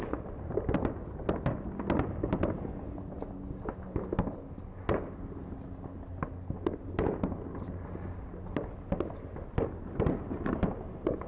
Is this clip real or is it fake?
real